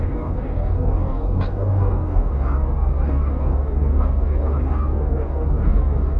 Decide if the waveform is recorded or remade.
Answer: remade